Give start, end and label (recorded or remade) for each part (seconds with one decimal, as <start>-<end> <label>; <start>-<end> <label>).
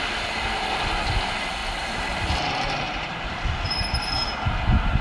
0.0-1.6 recorded; 1.6-4.3 remade; 4.3-5.0 recorded